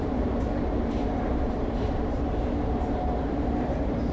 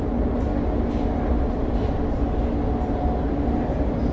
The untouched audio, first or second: second